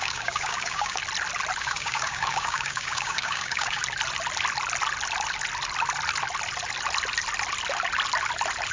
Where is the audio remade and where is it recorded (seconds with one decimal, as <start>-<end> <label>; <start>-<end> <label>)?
0.0-1.0 remade; 1.0-1.6 recorded; 1.6-3.8 remade; 3.8-8.7 recorded